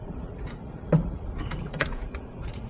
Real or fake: fake